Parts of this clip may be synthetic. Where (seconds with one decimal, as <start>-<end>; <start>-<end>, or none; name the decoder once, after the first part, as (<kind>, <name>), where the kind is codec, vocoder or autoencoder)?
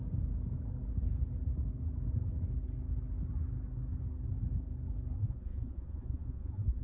5.2-6.8 (vocoder, Vocos)